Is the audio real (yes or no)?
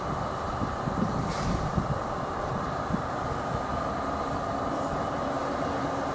yes